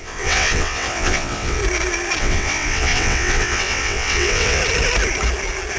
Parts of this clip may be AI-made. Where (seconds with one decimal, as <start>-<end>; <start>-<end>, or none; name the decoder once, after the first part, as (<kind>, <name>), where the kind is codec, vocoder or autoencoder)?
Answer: 0.0-1.6 (vocoder, WaveNeXt); 2.2-4.6